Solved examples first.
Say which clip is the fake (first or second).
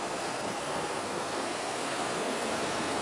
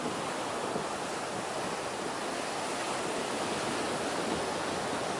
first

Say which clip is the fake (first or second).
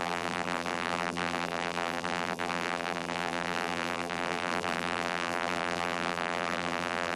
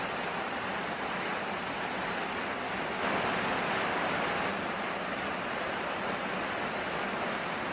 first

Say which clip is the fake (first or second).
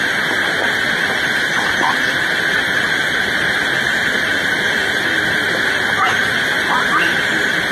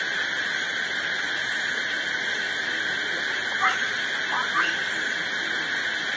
first